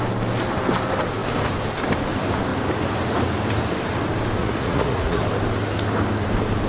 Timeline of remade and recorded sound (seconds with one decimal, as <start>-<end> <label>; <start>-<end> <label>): 0.0-4.4 recorded; 4.4-5.2 remade; 5.2-6.7 recorded